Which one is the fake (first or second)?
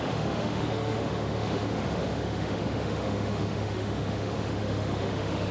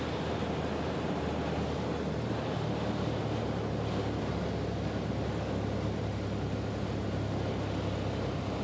first